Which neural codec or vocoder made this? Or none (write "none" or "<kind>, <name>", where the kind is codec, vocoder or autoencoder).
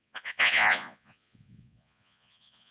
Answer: vocoder, Vocos